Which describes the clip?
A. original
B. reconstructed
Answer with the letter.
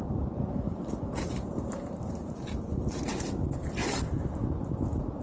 B